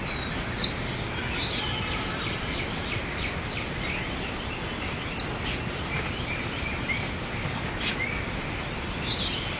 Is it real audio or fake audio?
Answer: real